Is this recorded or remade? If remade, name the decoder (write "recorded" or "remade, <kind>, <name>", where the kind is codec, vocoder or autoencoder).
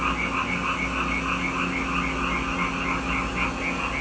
recorded